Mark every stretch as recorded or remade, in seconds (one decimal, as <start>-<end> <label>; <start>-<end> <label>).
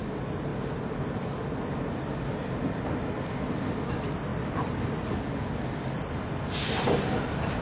0.0-0.5 remade; 0.5-3.9 recorded; 3.9-7.6 remade